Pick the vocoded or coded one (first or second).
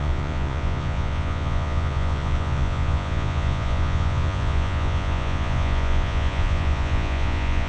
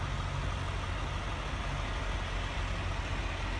first